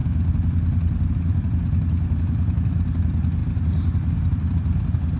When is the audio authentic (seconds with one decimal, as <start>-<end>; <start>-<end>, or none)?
0.0-5.2